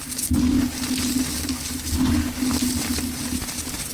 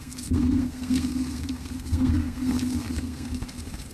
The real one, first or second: first